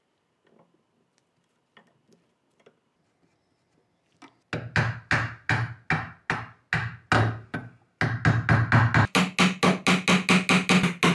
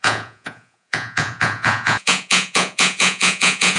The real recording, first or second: first